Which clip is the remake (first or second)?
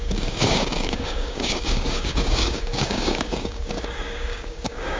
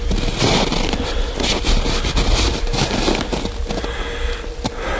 first